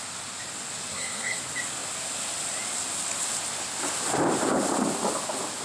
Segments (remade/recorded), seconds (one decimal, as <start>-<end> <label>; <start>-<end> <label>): 0.0-0.9 recorded; 0.9-1.4 remade; 1.4-5.6 recorded